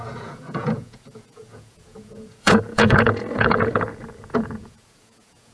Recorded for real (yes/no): no